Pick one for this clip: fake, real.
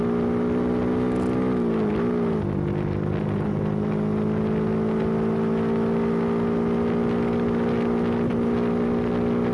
real